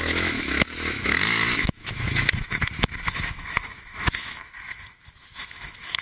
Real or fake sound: fake